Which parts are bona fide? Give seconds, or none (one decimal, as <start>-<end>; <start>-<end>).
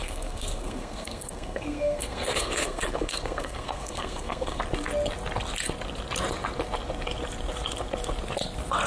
4.6-8.9